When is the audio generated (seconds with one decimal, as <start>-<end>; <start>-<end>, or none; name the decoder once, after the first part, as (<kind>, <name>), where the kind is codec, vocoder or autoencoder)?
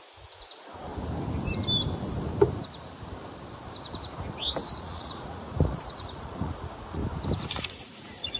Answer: 0.0-0.9 (vocoder, Vocos); 4.8-7.0; 7.7-8.4